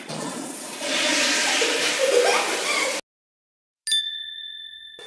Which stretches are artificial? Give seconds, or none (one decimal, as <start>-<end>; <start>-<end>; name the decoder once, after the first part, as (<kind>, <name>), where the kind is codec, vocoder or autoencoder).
0.0-1.1 (vocoder, Vocos); 4.0-5.1